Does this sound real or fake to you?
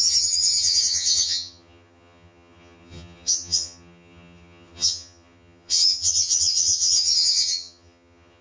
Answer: fake